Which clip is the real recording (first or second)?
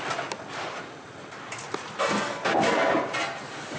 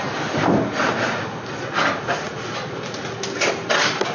second